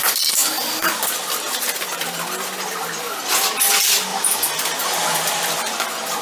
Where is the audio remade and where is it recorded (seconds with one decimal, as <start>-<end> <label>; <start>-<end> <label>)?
0.0-6.2 remade